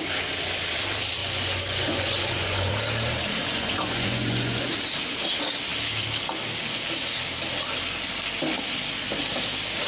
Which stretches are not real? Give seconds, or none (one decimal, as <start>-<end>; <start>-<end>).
1.2-2.7; 3.5-4.7